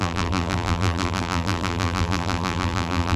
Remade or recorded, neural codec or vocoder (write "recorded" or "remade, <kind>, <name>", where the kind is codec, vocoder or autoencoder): remade, vocoder, BigVGAN v2